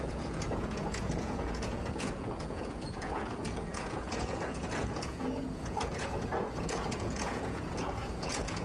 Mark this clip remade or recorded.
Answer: remade